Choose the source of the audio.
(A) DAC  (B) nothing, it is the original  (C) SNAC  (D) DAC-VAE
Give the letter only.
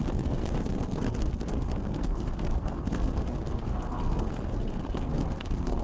C